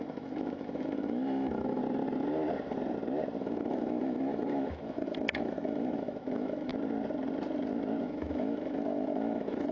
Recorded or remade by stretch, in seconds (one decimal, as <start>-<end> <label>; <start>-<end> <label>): 0.0-1.8 remade; 1.8-3.4 recorded; 3.4-6.7 remade; 6.7-8.0 recorded; 8.0-9.7 remade